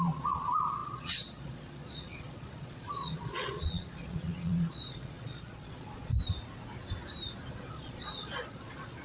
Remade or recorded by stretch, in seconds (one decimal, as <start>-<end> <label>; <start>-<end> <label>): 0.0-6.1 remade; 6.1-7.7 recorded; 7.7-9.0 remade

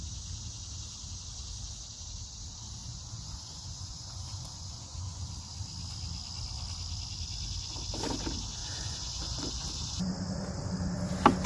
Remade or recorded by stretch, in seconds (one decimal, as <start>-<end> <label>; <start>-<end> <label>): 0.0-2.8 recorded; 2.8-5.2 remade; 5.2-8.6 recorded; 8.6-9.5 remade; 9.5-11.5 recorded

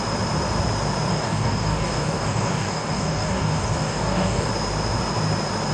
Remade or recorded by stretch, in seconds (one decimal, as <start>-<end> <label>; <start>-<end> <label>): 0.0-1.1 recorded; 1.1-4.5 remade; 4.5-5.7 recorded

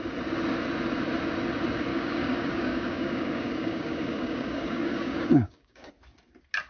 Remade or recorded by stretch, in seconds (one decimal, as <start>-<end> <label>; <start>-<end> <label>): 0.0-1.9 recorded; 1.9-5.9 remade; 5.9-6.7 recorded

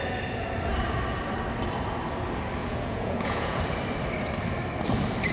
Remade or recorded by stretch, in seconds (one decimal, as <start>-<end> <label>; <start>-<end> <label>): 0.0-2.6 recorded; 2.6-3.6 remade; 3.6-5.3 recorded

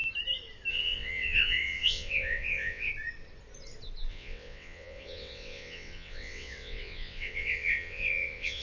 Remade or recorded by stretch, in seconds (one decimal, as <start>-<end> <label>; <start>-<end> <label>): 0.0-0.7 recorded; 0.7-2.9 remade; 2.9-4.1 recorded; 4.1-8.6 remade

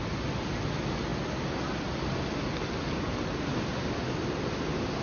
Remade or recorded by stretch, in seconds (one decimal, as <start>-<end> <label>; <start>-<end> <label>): 0.0-5.0 recorded